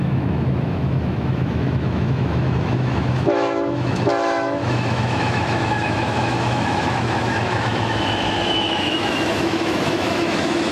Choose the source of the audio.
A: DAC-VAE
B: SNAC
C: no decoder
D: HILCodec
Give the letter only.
A